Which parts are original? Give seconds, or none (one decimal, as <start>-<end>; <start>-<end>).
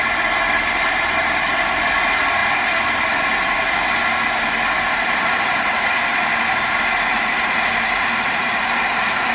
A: 0.0-9.3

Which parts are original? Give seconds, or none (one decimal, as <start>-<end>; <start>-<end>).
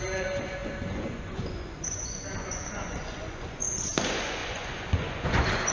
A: none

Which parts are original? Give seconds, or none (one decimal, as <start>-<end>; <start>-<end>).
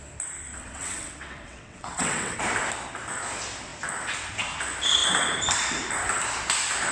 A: 0.0-0.5; 2.4-6.9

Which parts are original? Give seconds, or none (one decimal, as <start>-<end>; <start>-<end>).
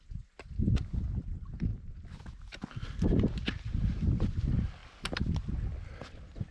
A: 0.0-6.5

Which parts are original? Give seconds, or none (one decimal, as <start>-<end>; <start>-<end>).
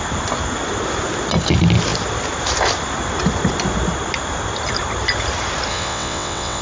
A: 0.0-5.7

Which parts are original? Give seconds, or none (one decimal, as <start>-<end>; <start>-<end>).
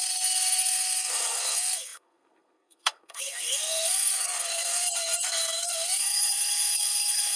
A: none